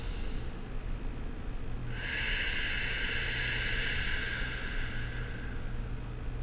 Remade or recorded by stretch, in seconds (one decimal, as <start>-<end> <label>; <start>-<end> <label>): 0.0-6.4 recorded